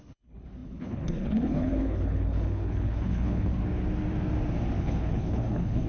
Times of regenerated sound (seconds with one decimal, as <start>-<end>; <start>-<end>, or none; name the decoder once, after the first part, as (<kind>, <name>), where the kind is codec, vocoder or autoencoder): 0.0-3.6 (codec, HILCodec); 4.8-5.9